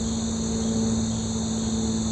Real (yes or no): yes